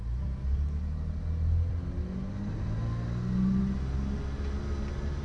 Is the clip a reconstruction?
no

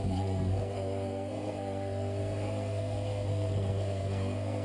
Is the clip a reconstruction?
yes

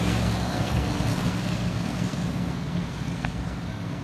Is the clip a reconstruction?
yes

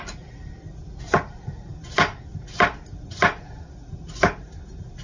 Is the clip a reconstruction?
no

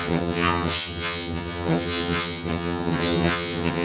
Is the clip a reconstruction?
yes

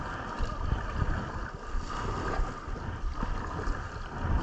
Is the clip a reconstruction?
no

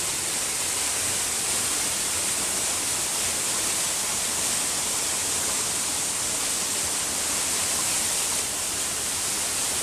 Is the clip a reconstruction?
no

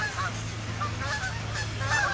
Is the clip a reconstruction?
no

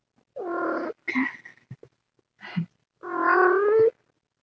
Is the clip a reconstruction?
no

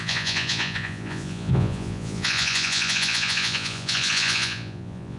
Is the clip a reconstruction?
yes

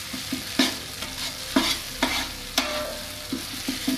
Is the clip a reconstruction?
no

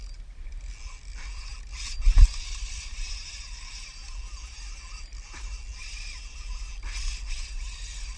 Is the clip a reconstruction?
no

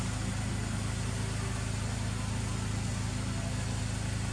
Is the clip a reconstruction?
no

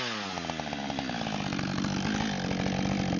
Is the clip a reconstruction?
no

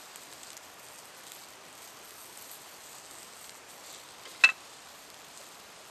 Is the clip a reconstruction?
no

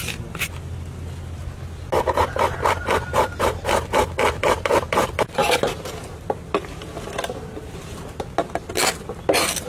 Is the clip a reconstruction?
no